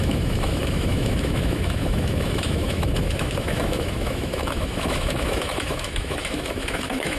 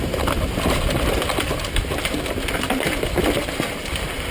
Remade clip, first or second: first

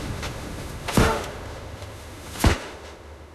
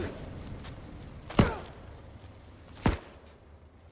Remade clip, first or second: first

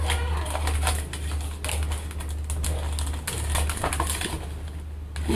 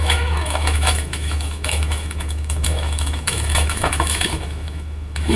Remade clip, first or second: second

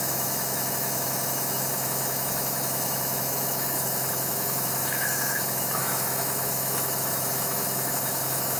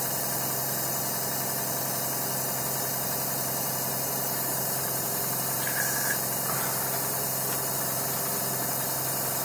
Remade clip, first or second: first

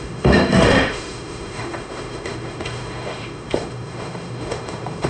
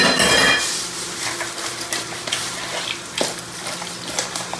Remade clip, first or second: first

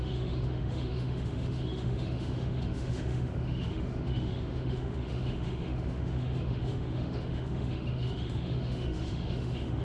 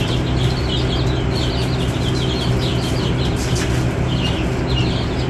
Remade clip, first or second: first